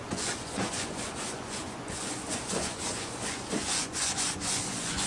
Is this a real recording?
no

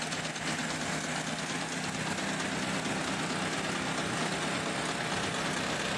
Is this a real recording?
yes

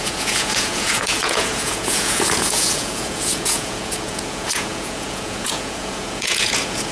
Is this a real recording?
no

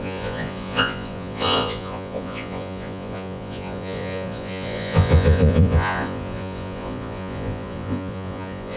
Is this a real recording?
no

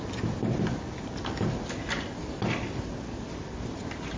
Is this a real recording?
yes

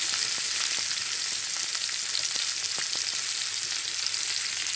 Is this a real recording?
yes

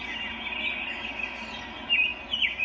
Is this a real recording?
yes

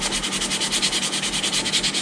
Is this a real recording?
yes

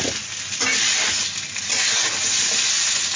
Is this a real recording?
yes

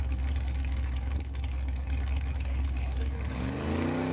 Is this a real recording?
no